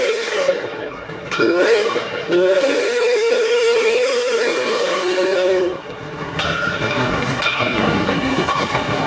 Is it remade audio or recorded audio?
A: remade